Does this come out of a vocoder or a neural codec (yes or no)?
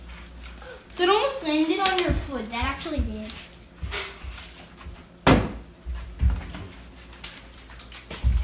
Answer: no